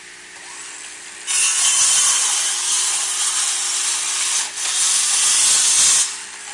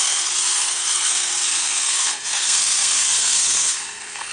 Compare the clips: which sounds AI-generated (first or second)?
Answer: second